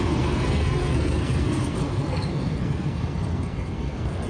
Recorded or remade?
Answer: remade